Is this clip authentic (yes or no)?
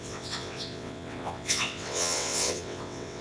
no